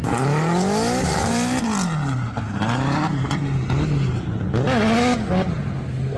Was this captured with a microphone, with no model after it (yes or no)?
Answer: yes